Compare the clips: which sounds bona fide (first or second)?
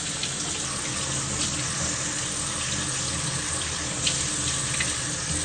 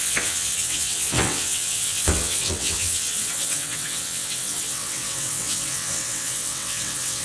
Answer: first